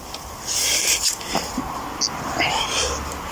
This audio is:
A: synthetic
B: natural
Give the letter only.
B